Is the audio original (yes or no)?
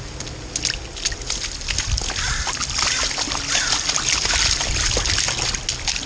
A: yes